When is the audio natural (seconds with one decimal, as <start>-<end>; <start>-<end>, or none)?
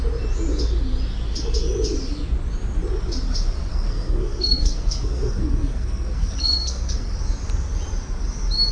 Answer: 0.0-3.7; 7.1-8.7